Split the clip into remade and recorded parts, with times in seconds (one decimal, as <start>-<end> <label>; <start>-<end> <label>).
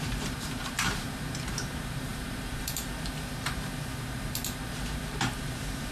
0.0-5.9 remade